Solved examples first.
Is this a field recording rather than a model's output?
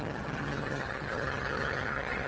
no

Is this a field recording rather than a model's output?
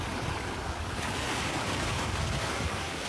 no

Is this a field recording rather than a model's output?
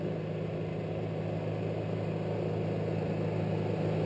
yes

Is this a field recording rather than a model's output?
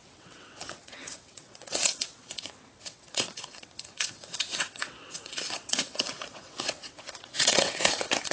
no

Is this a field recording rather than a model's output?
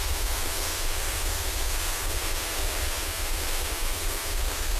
no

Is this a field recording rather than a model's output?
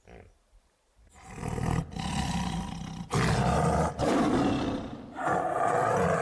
yes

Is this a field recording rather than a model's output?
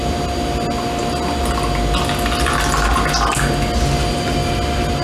yes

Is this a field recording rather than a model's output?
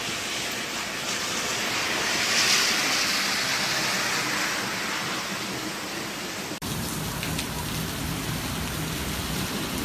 yes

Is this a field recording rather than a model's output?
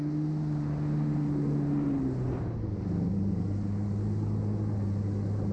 yes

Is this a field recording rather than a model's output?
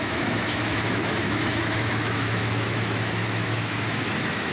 no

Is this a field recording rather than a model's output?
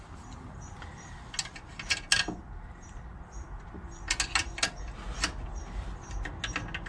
yes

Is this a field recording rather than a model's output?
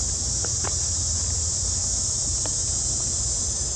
yes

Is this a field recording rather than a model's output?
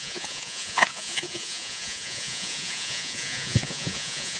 no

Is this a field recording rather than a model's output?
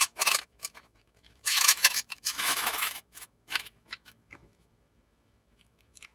no